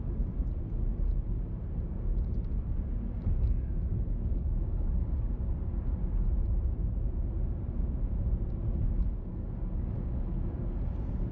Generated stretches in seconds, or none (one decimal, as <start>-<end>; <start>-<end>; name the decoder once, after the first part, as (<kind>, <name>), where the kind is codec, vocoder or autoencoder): 3.9-5.3 (codec, DAC); 9.3-10.8